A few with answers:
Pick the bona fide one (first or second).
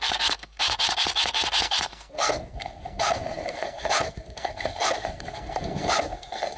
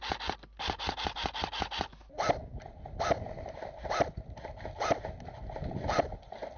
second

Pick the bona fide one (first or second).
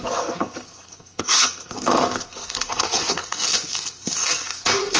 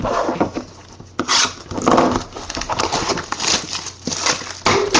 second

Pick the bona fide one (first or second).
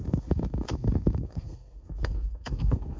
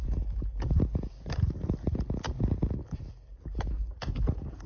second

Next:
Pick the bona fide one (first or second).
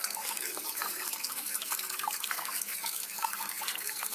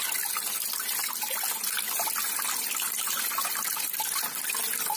second